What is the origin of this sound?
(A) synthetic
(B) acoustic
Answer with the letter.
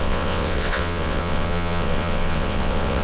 A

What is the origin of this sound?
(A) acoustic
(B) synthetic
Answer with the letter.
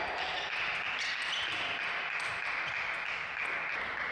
A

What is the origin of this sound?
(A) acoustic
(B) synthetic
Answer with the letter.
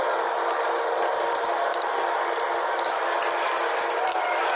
A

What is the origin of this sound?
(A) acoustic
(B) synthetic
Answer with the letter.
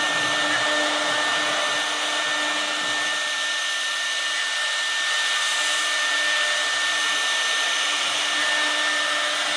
A